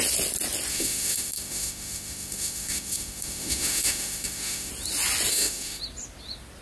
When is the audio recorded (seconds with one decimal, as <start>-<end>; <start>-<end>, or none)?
0.0-0.7; 4.7-5.3; 5.8-6.6